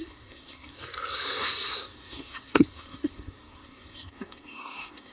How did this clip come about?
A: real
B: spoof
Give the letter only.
B